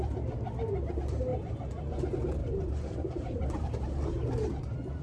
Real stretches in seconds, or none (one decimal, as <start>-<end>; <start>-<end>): 0.0-1.3; 2.0-2.4; 3.7-5.0